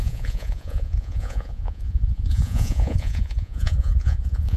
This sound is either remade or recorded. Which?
remade